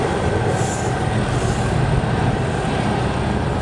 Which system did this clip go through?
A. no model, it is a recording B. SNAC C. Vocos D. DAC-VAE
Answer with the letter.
A